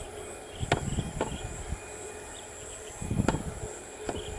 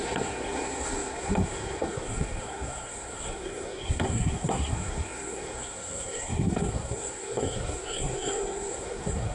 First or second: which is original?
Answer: first